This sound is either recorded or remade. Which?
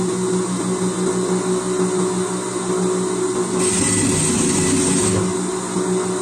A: recorded